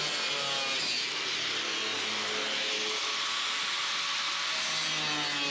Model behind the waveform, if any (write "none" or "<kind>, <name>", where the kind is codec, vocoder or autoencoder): none